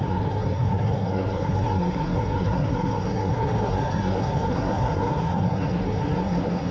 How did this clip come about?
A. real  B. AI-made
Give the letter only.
B